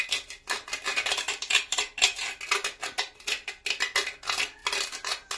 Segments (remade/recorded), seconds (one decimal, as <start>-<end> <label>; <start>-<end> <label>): 0.0-5.4 recorded